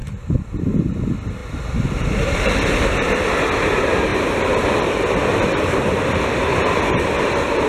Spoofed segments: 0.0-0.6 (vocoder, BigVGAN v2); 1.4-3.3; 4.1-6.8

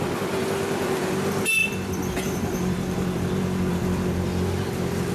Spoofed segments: 1.6-5.1 (vocoder, BigVGAN v2)

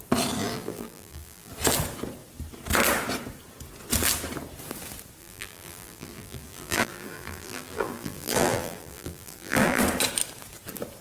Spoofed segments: 0.4-1.5 (vocoder, BigVGAN v2); 5.2-9.8